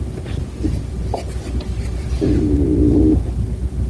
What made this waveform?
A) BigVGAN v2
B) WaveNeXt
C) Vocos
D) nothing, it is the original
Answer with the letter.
D